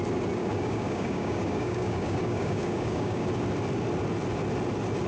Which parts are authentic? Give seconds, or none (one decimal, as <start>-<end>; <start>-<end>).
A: 0.0-0.4; 3.3-5.1